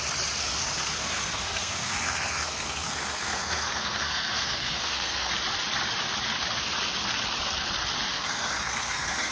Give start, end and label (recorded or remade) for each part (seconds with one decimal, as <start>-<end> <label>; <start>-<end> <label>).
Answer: 0.0-0.4 recorded; 0.4-5.3 remade; 5.3-8.1 recorded; 8.1-9.3 remade